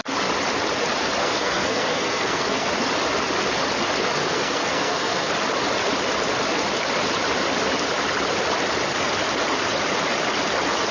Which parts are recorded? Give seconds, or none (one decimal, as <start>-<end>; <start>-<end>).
0.0-1.2; 2.7-4.2; 5.3-10.9